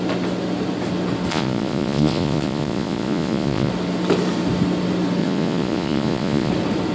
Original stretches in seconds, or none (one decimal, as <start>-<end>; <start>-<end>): 0.0-1.3; 3.7-5.2; 6.5-6.9